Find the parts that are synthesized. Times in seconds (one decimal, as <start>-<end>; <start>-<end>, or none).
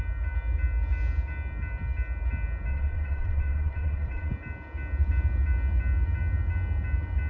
2.7-4.3